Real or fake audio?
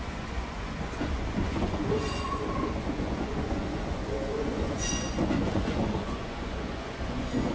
fake